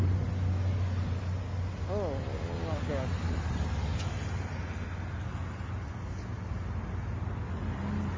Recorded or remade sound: recorded